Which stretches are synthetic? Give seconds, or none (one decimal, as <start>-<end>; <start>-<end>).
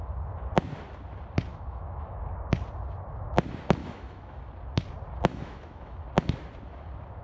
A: 1.5-2.2; 3.8-4.4; 5.3-6.0